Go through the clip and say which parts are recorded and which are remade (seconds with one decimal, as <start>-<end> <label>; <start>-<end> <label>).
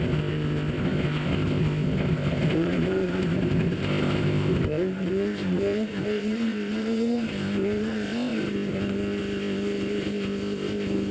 0.0-11.1 remade